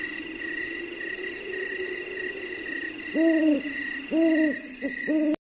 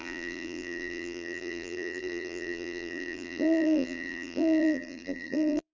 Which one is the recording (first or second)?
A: first